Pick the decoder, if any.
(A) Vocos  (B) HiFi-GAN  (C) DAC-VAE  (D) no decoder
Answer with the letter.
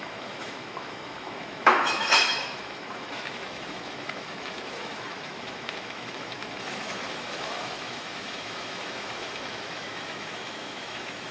C